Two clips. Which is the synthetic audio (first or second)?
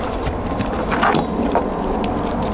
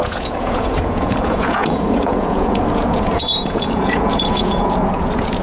second